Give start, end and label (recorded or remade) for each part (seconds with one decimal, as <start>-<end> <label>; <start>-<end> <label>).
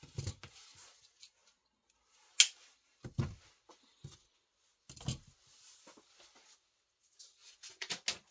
0.0-7.4 recorded; 7.4-7.9 remade; 7.9-8.3 recorded